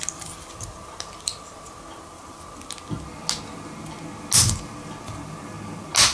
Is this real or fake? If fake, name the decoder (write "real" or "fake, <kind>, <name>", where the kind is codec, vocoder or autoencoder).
real